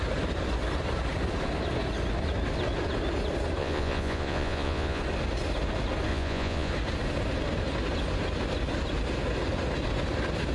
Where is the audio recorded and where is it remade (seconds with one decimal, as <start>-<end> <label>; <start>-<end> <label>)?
0.0-3.6 recorded; 3.6-5.0 remade; 5.0-6.1 recorded; 6.1-6.7 remade; 6.7-10.5 recorded